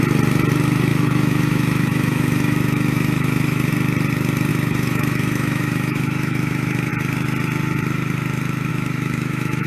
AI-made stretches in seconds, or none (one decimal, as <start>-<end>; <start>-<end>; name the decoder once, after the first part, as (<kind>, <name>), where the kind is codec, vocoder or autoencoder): 0.9-3.7 (autoencoder, DAC-VAE); 4.5-6.9; 8.7-9.7